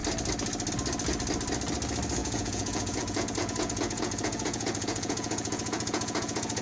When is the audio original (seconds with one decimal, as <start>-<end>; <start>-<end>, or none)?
0.0-2.2